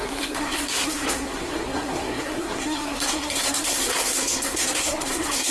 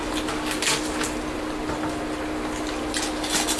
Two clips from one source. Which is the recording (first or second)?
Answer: second